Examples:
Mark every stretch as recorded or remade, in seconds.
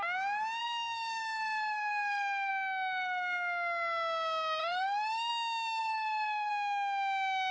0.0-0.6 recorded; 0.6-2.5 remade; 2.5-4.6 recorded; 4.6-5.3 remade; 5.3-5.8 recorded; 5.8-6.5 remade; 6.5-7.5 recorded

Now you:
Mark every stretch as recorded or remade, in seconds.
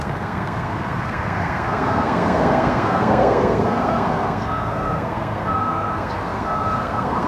0.0-7.3 remade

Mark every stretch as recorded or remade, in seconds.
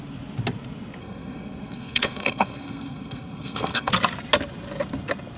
0.0-1.0 recorded; 1.0-3.9 remade; 3.9-5.4 recorded